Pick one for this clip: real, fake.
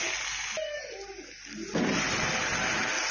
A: real